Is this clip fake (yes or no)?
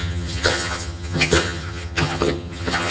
yes